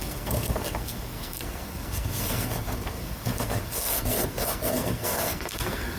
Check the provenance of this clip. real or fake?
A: fake